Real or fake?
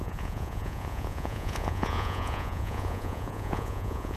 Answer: fake